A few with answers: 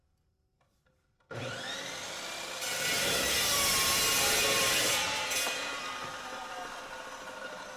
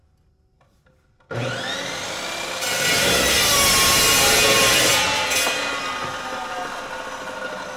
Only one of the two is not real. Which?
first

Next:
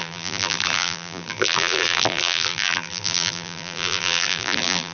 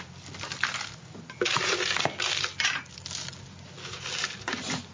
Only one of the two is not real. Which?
first